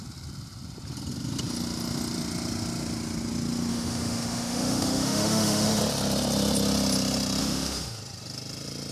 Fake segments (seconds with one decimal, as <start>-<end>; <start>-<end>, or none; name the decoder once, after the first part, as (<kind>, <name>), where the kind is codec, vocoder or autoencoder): 3.7-5.8 (autoencoder, DAC-VAE); 7.4-8.0